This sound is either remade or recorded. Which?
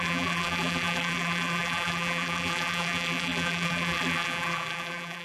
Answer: remade